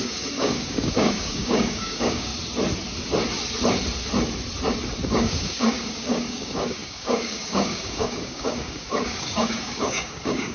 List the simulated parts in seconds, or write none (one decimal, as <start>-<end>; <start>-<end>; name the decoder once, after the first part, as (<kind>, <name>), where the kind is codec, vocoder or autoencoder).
0.0-2.3 (codec, DAC); 5.1-10.5